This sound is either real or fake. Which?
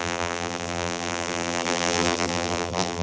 fake